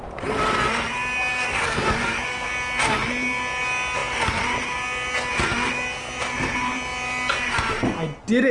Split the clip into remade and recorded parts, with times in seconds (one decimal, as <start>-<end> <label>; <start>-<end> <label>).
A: 0.0-1.3 recorded; 1.3-2.5 remade; 2.5-8.5 recorded